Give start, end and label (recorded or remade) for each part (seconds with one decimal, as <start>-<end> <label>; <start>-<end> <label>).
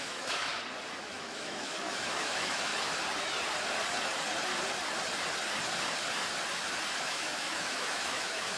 0.0-0.5 remade; 0.5-1.0 recorded; 1.0-2.7 remade; 2.7-7.0 recorded; 7.0-8.6 remade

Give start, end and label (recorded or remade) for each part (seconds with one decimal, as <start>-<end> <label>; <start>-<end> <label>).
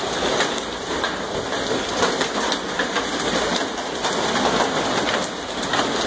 0.0-6.1 recorded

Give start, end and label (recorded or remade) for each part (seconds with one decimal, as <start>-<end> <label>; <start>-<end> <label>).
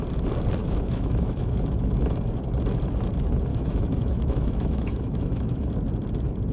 0.0-0.6 recorded; 0.6-1.9 remade; 1.9-3.5 recorded; 3.5-5.7 remade; 5.7-6.5 recorded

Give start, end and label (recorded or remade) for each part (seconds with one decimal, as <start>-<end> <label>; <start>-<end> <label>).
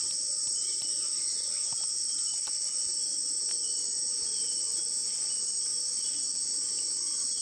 0.0-7.4 recorded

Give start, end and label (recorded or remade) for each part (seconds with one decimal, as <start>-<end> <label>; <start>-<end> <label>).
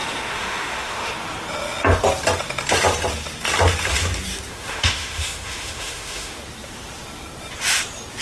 0.0-1.1 remade; 1.1-4.5 recorded; 4.5-6.4 remade; 6.4-8.2 recorded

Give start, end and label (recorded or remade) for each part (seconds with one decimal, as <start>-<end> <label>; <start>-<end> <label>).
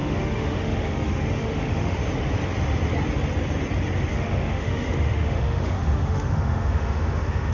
0.0-2.0 remade; 2.0-4.1 recorded; 4.1-7.5 remade